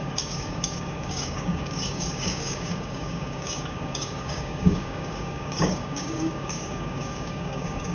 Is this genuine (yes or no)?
no